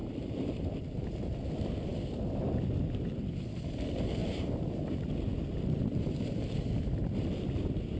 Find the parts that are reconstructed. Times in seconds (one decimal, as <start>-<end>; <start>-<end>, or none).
0.0-0.8; 4.2-4.8